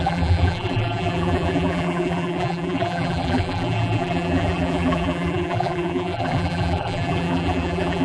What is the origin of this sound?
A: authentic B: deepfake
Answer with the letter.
B